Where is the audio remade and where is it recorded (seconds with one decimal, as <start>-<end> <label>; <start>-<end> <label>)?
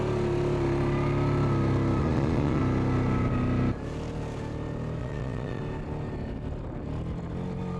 0.0-2.0 recorded; 2.0-2.6 remade; 2.6-5.0 recorded; 5.0-5.6 remade; 5.6-7.8 recorded